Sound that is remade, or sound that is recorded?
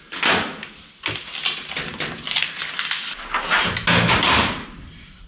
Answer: recorded